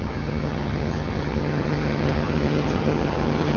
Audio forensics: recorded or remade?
remade